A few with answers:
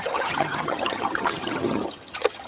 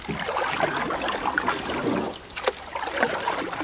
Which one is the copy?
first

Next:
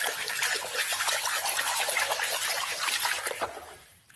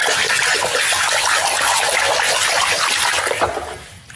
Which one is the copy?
first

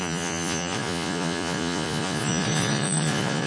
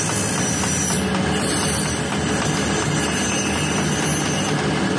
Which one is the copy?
first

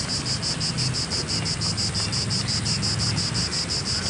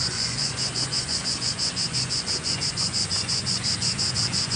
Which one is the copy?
second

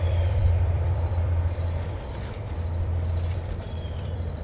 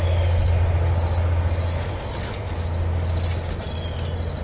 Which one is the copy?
first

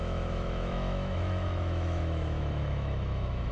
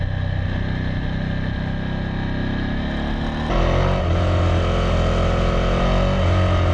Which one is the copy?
first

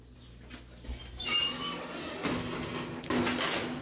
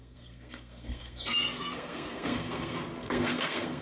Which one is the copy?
second